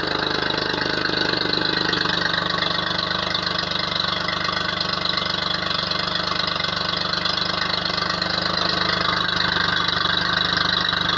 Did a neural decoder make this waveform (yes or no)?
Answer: no